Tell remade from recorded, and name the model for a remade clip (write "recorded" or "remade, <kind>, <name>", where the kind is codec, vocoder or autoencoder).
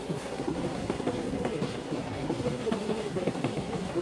remade, codec, SNAC